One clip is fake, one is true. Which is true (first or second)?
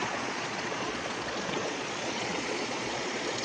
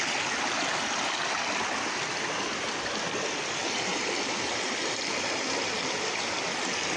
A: second